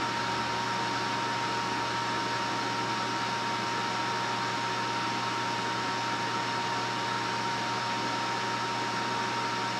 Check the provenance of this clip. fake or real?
real